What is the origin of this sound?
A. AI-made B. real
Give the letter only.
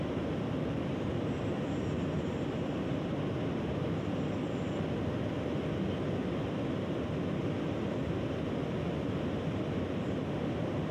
B